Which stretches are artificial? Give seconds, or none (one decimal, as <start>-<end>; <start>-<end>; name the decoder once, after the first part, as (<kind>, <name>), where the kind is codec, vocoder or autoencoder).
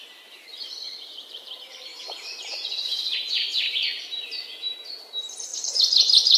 0.0-4.4 (vocoder, BigVGAN v2); 5.0-6.4